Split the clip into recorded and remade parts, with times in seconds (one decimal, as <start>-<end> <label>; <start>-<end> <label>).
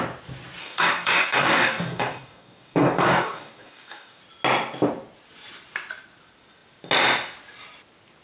0.0-0.6 recorded; 0.6-4.2 remade; 4.2-8.2 recorded